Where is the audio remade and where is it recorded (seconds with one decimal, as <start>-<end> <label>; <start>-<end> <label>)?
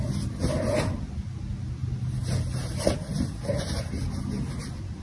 0.0-5.0 recorded